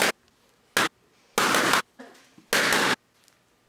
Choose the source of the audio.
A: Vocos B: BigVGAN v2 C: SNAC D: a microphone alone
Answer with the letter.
D